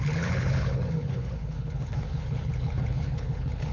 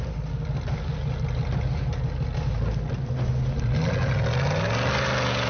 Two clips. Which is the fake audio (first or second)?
first